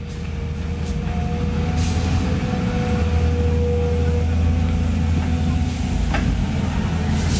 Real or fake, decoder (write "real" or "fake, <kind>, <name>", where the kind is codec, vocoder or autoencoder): real